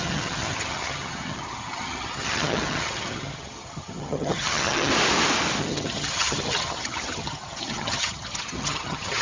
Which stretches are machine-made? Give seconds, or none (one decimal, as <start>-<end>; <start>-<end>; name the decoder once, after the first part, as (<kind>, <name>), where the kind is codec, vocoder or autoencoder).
0.0-4.9 (vocoder, HiFi-GAN); 5.6-9.2